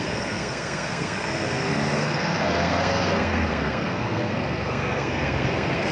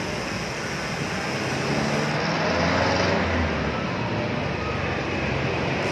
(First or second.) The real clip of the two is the second